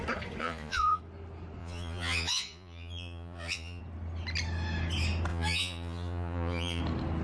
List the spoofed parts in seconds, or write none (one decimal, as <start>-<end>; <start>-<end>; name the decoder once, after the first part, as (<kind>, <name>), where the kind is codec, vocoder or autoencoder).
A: 0.4-1.0 (vocoder, Vocos); 1.6-3.8; 5.3-6.8